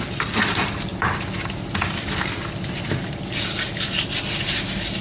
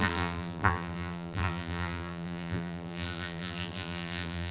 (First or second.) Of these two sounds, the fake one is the second